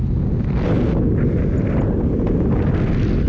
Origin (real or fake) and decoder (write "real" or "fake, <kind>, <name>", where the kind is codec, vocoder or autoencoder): real